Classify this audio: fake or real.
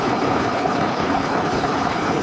fake